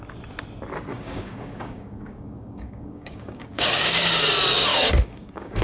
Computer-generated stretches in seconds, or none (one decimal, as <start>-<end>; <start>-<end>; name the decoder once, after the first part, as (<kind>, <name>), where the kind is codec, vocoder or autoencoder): 0.9-4.2 (codec, DAC); 4.7-5.6